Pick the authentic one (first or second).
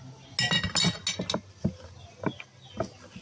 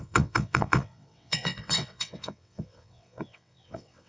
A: first